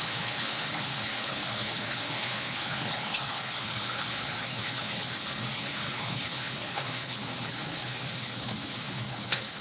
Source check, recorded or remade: remade